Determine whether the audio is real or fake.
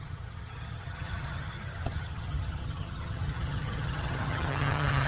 fake